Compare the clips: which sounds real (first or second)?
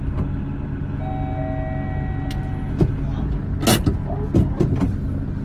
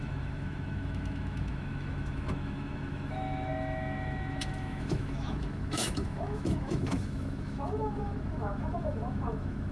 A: first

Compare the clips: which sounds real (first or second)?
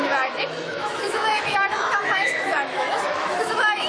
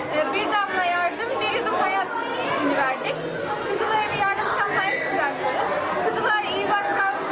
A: second